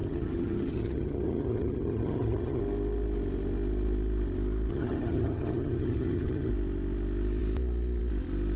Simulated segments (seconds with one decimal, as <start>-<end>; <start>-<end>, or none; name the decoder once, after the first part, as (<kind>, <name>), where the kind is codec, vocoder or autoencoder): 0.0-2.6 (vocoder, HiFi-GAN); 4.7-6.5